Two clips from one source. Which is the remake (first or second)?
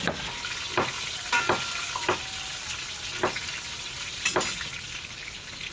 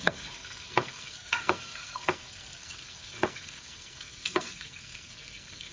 second